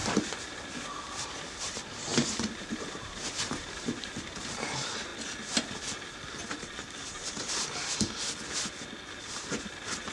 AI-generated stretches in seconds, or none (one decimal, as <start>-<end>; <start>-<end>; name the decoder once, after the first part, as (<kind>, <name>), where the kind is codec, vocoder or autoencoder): 1.2-5.1 (vocoder, BigVGAN v2); 9.3-10.1